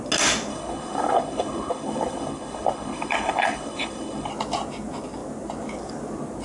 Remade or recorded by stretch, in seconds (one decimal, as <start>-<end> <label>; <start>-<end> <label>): 0.0-0.5 recorded; 0.5-4.3 remade; 4.3-6.4 recorded